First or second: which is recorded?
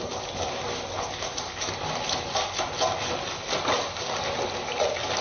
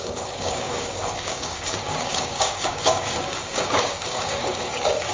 first